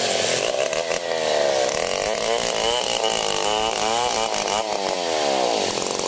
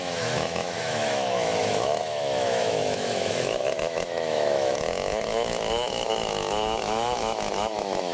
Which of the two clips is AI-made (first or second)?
second